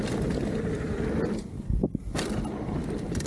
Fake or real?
real